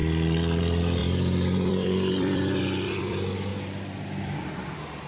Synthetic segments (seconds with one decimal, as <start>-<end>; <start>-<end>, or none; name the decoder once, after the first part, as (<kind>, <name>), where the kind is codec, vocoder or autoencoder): 0.0-3.5 (vocoder, BigVGAN v2); 4.2-5.1